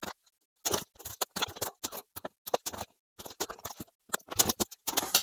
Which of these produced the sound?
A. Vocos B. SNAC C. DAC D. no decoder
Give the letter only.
D